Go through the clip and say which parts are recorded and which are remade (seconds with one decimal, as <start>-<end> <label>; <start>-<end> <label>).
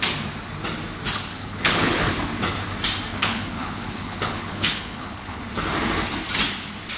0.0-1.3 recorded; 1.3-2.1 remade; 2.1-3.1 recorded; 3.1-5.4 remade; 5.4-7.0 recorded